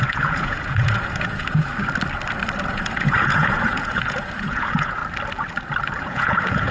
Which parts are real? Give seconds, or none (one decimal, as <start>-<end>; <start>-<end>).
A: 1.7-2.7; 5.0-6.0